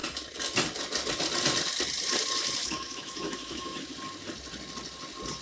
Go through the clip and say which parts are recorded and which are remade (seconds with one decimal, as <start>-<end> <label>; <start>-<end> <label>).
0.0-2.6 recorded; 2.6-3.9 remade; 3.9-5.4 recorded